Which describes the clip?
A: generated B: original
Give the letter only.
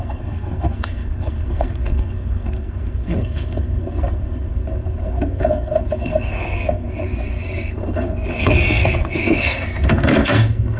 A